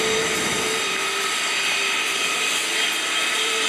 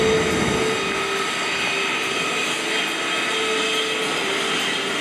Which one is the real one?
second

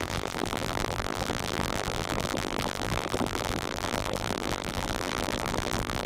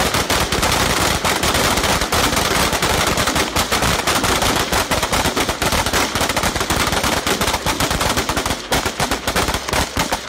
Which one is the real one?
second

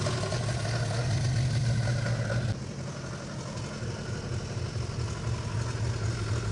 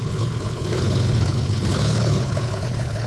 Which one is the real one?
first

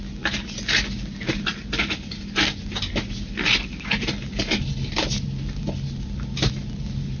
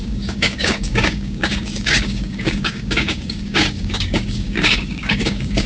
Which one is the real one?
first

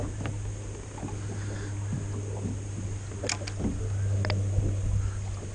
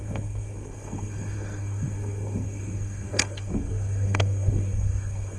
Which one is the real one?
first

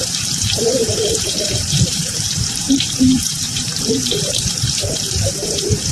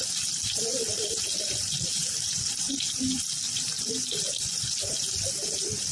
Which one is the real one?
second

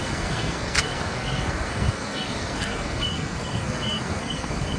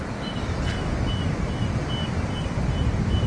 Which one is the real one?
second